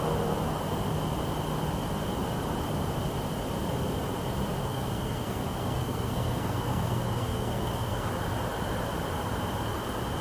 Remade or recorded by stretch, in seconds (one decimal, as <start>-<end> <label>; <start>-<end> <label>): 0.0-4.6 recorded; 4.6-8.1 remade; 8.1-10.2 recorded